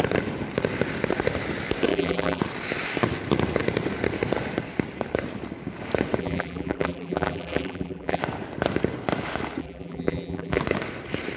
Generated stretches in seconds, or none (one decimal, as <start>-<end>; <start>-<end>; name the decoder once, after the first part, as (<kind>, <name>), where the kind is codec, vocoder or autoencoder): 1.9-2.4 (vocoder, BigVGAN v2); 6.2-8.2; 9.6-10.6